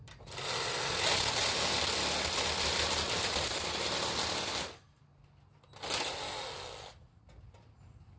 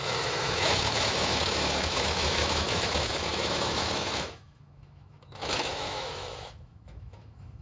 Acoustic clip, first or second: first